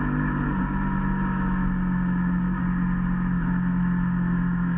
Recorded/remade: recorded